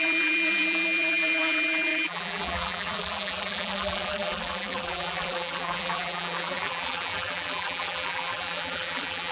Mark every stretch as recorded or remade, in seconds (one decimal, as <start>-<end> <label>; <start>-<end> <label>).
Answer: 0.0-9.3 remade